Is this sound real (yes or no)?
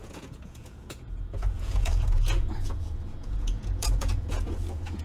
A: no